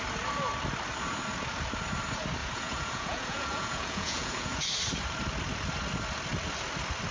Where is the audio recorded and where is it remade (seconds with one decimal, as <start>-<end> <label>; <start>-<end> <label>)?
0.0-2.4 recorded; 2.4-4.6 remade; 4.6-7.1 recorded